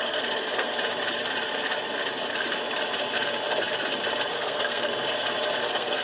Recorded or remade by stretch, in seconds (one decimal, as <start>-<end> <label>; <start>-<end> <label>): 0.0-0.7 remade; 0.7-4.3 recorded; 4.3-4.9 remade; 4.9-5.6 recorded; 5.6-6.0 remade